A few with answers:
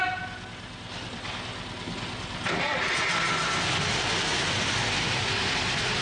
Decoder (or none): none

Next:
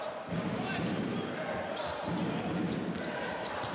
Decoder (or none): none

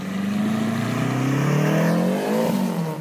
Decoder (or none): none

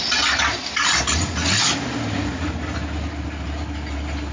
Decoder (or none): none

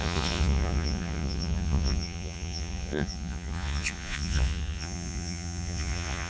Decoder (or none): vocoder, Vocos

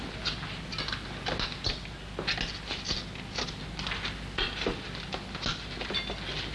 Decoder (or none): none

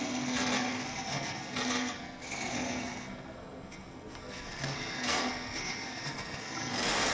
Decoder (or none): codec, SNAC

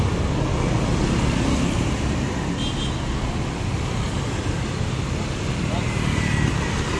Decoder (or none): none